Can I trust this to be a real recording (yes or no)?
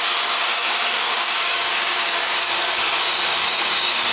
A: no